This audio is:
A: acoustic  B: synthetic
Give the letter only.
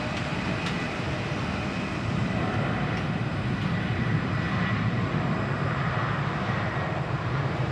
B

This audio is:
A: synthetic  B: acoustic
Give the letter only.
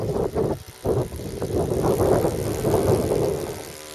B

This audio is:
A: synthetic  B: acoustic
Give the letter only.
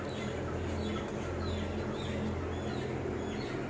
B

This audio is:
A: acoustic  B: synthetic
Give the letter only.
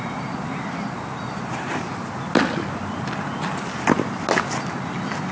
A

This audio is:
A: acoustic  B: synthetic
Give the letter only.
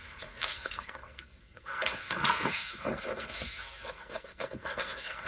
B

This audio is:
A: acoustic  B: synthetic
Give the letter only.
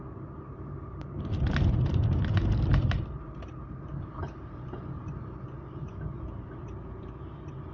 B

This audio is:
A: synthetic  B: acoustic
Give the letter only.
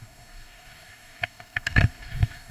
A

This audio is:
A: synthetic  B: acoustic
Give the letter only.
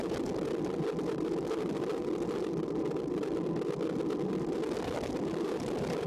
B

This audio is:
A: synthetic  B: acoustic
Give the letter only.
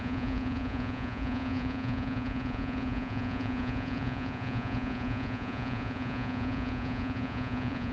A